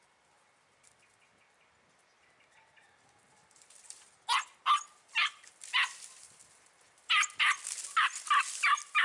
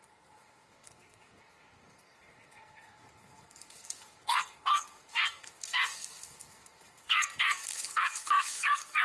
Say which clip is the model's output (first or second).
second